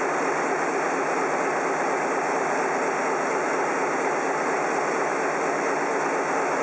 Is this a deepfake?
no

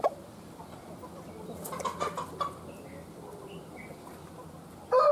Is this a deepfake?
no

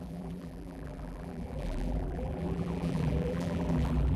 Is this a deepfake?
yes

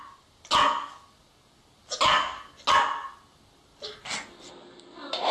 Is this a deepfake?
no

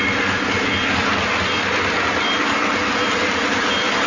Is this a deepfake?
no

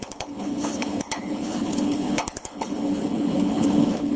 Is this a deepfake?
yes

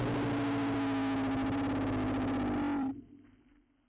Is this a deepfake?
no